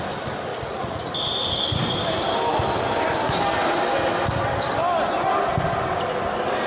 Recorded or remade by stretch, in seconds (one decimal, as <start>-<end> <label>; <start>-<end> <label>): 0.0-0.5 recorded; 0.5-1.1 remade; 1.1-6.7 recorded